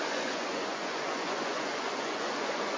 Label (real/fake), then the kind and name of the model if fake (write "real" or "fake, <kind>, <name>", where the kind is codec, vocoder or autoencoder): fake, vocoder, Vocos